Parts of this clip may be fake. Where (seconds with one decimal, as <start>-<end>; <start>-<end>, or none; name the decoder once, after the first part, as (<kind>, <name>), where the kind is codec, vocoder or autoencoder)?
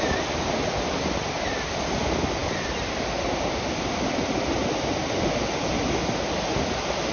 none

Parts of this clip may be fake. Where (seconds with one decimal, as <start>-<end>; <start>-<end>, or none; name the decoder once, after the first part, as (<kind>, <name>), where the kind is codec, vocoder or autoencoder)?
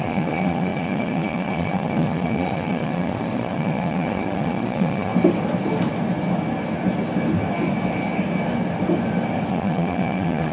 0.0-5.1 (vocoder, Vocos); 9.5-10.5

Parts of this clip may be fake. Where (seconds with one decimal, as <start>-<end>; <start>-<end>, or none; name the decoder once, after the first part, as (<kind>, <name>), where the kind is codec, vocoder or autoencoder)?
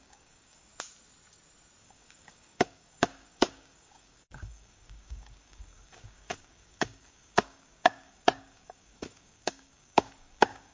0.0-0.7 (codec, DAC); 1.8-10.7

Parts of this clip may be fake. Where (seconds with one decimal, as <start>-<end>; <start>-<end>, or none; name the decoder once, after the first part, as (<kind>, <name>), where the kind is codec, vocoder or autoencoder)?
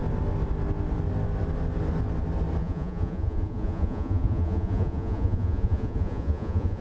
2.6-6.8 (vocoder, Vocos)